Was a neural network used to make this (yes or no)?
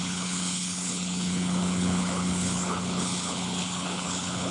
yes